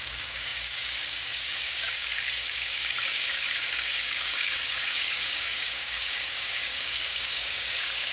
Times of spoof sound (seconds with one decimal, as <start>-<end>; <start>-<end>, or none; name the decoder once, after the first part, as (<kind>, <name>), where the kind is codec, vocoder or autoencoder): 0.0-8.1 (codec, DAC)